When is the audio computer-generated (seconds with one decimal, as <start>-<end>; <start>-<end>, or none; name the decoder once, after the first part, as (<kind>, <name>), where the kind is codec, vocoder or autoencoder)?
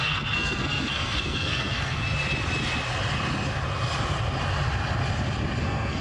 0.0-2.0 (codec, SNAC); 5.6-6.0